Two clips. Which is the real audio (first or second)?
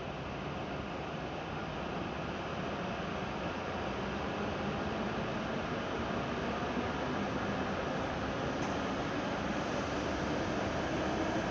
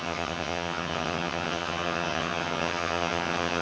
first